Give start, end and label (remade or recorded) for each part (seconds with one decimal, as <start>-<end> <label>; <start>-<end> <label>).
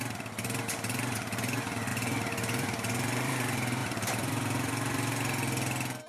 0.0-1.9 recorded; 1.9-3.3 remade; 3.3-3.8 recorded; 3.8-5.1 remade; 5.1-6.1 recorded